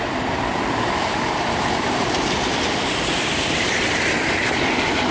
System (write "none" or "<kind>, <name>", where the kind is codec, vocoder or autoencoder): none